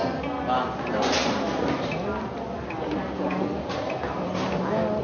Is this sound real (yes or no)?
yes